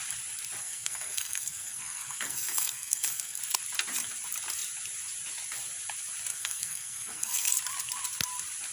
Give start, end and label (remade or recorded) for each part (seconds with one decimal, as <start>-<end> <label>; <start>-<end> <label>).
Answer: 0.0-0.6 recorded; 0.6-3.4 remade; 3.4-6.3 recorded; 6.3-7.5 remade; 7.5-8.7 recorded